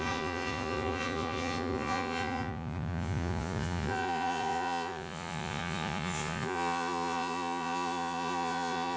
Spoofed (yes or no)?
yes